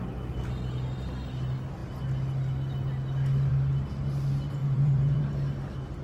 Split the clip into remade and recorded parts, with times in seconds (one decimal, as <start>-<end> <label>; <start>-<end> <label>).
0.0-4.6 recorded; 4.6-5.2 remade; 5.2-6.0 recorded